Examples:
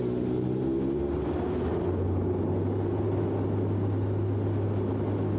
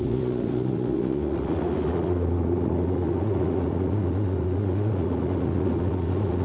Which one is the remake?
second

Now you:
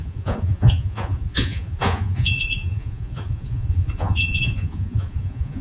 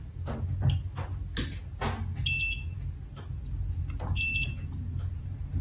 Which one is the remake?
first